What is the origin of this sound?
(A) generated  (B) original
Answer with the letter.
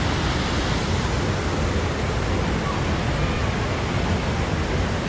B